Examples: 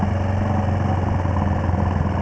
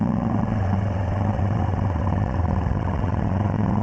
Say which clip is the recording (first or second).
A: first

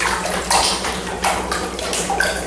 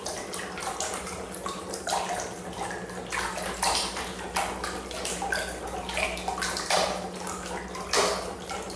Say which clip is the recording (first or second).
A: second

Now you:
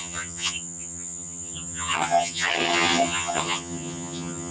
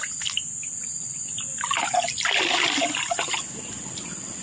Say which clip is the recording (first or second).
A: second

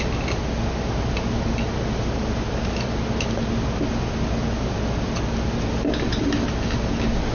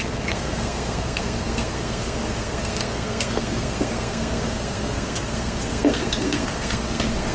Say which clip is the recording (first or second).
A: first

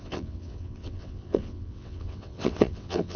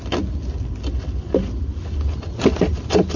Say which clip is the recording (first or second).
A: second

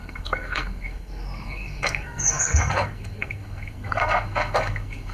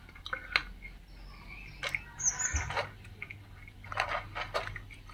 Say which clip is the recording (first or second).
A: second